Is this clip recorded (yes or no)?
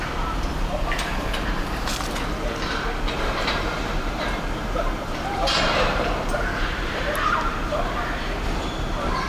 no